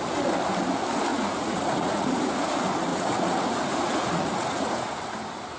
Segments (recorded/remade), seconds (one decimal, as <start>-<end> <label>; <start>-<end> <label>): 0.0-1.1 recorded; 1.1-2.5 remade; 2.5-2.9 recorded; 2.9-5.0 remade; 5.0-5.6 recorded